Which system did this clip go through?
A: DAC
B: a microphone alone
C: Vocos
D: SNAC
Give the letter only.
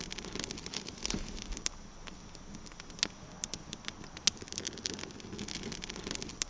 B